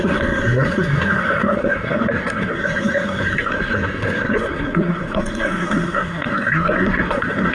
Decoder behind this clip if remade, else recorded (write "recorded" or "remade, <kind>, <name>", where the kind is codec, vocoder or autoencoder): remade, codec, SNAC